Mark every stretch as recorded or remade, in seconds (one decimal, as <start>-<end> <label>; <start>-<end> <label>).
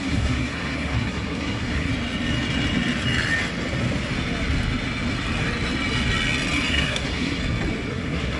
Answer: 0.0-1.9 remade; 1.9-6.7 recorded; 6.7-7.4 remade; 7.4-7.9 recorded; 7.9-8.4 remade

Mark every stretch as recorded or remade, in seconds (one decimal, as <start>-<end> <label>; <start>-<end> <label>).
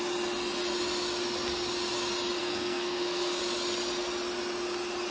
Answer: 0.0-2.4 recorded; 2.4-3.4 remade; 3.4-5.1 recorded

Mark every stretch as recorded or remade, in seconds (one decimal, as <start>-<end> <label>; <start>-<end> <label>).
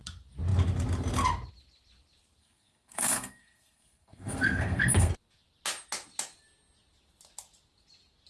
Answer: 0.0-2.4 recorded; 2.4-5.1 remade; 5.1-8.3 recorded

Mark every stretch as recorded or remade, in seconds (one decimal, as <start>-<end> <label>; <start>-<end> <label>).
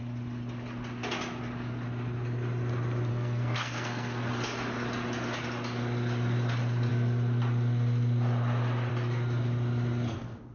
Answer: 0.0-3.1 recorded; 3.1-4.3 remade; 4.3-10.5 recorded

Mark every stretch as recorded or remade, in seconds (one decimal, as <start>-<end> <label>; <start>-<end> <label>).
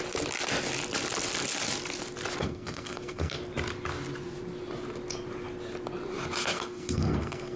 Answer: 0.0-2.4 recorded; 2.4-3.4 remade; 3.4-6.4 recorded; 6.4-7.6 remade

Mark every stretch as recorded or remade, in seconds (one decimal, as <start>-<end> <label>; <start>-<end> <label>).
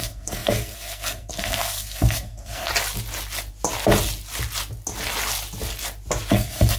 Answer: 0.0-2.7 remade; 2.7-6.3 recorded; 6.3-6.8 remade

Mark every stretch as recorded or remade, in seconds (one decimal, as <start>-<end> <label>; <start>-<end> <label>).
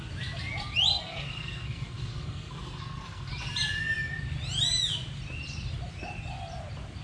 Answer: 0.0-0.9 recorded; 0.9-3.3 remade; 3.3-7.0 recorded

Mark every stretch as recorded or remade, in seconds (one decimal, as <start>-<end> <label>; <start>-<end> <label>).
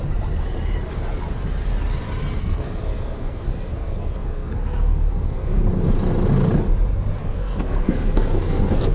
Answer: 0.0-2.4 recorded; 2.4-5.6 remade; 5.6-7.2 recorded; 7.2-8.9 remade